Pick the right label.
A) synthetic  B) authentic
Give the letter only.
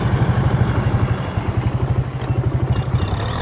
B